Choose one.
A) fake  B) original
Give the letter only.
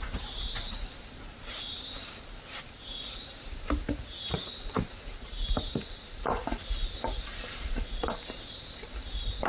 A